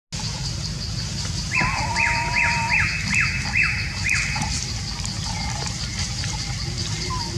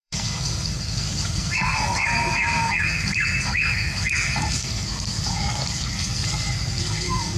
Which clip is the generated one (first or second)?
second